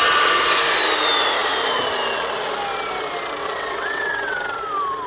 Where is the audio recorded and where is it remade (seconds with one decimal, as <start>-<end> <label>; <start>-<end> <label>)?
0.0-3.4 recorded; 3.4-4.6 remade; 4.6-5.1 recorded